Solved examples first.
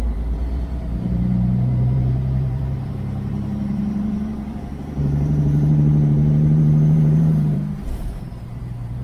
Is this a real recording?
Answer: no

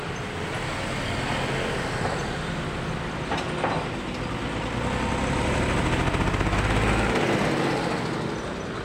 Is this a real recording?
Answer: yes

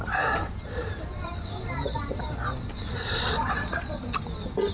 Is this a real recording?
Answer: yes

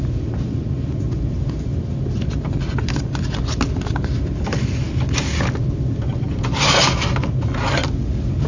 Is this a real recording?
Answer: yes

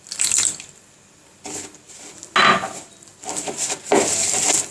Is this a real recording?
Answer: yes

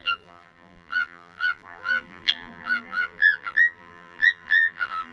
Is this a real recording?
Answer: no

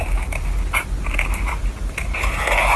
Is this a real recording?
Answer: yes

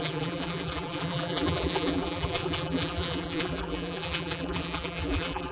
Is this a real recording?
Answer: no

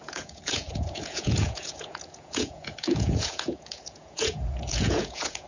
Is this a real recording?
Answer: no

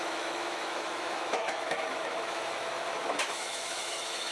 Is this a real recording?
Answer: no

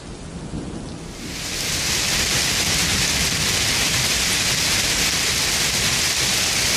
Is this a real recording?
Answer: yes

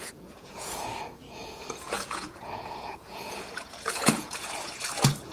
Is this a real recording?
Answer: no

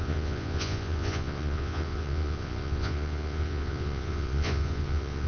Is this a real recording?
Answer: no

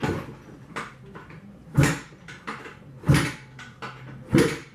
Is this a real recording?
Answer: yes